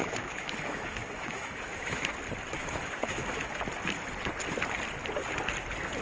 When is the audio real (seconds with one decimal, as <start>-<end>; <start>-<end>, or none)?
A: 2.1-2.6; 3.6-6.0